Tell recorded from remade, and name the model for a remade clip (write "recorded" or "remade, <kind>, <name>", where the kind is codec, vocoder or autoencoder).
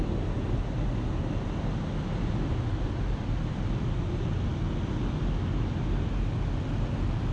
recorded